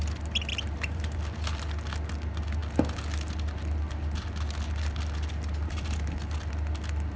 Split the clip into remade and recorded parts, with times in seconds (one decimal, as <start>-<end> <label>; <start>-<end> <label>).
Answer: 0.0-0.5 recorded; 0.5-1.2 remade; 1.2-7.2 recorded